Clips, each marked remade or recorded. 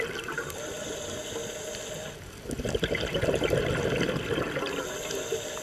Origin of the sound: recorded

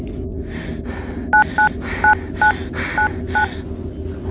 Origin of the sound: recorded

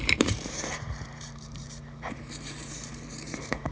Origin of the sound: remade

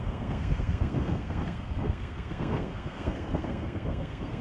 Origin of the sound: remade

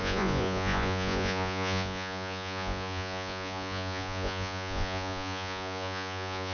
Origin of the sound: remade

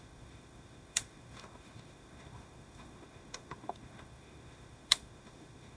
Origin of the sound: remade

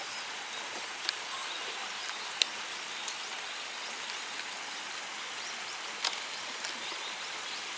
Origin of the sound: recorded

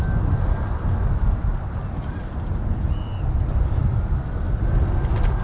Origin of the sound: recorded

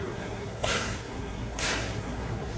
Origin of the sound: remade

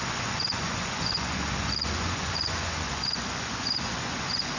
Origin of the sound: remade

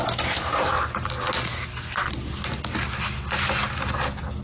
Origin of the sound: recorded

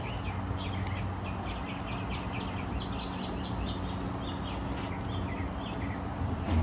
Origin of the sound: recorded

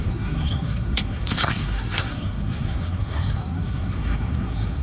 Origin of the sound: remade